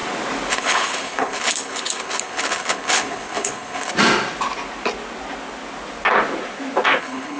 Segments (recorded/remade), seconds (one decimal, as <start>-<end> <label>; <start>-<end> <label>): 0.0-0.5 recorded; 0.5-3.9 remade; 3.9-7.0 recorded; 7.0-7.4 remade